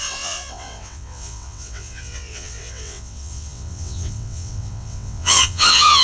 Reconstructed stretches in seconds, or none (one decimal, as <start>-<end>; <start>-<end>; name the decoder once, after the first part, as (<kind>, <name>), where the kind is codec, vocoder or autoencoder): 0.0-6.0 (vocoder, WaveNeXt)